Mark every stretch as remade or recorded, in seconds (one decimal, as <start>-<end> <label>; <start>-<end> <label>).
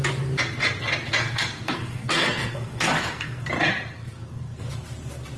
0.0-1.2 recorded; 1.2-3.5 remade; 3.5-4.0 recorded; 4.0-4.7 remade; 4.7-5.4 recorded